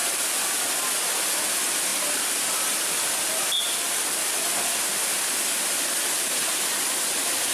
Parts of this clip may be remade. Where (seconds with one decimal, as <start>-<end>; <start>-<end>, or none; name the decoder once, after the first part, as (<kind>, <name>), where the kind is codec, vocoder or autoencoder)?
0.0-1.1 (vocoder, BigVGAN v2); 1.9-4.8